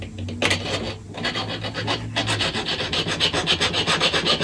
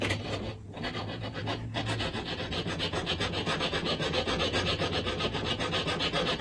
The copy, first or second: second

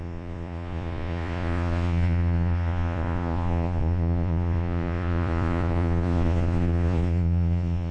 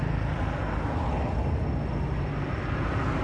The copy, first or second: first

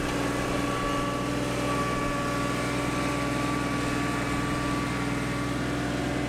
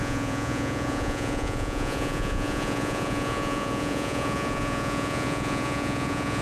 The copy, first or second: second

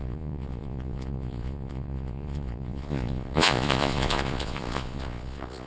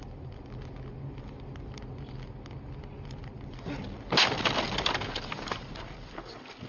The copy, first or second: first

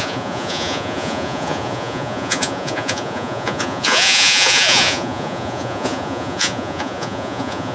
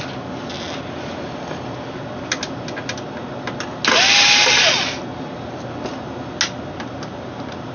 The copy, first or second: first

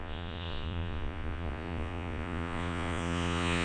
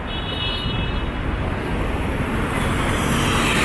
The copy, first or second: first